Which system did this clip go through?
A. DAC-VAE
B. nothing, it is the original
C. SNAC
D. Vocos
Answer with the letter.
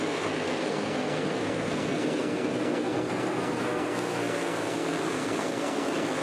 C